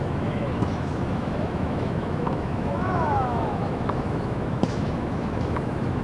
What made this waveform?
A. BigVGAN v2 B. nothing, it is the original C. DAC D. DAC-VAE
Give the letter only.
D